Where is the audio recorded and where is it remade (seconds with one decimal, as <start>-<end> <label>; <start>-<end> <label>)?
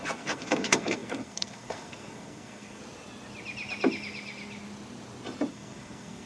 0.0-2.8 remade; 2.8-5.5 recorded; 5.5-6.3 remade